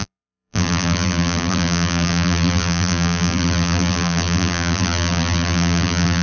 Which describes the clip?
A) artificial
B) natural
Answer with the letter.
A